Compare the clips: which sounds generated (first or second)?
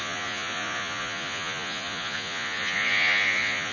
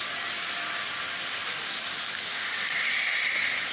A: first